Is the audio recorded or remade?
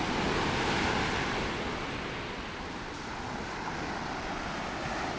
recorded